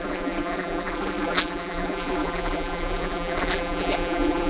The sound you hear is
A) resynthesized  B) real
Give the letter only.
A